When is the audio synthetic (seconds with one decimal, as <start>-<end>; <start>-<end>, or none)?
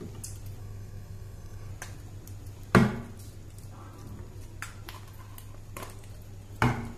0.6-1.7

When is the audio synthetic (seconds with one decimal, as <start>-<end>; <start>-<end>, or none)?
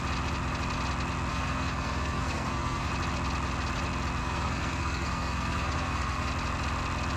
1.3-2.9; 4.2-6.3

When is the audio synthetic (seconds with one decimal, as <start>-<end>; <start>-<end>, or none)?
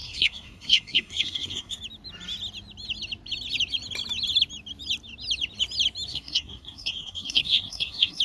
0.0-1.8; 6.1-8.2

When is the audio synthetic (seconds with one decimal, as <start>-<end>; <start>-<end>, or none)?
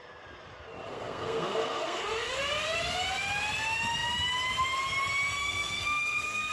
0.9-2.4; 5.4-6.5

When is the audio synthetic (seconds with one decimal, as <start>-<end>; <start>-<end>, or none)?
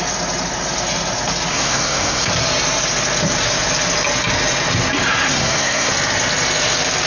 1.5-2.3; 5.3-5.9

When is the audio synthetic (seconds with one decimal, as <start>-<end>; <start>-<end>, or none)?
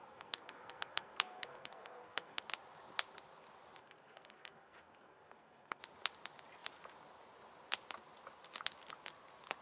0.0-2.4; 3.8-5.8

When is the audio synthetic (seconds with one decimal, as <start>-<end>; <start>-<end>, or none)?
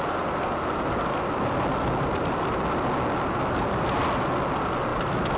none